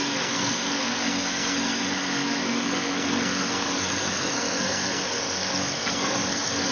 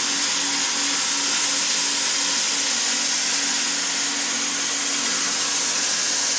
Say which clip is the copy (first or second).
first